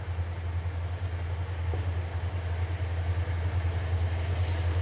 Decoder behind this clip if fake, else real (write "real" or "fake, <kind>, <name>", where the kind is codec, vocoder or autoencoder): real